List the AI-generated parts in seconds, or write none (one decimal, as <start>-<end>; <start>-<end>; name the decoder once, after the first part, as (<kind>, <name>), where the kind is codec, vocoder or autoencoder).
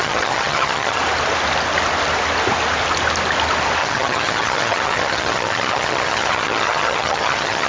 0.0-1.0 (vocoder, HiFi-GAN); 3.8-7.7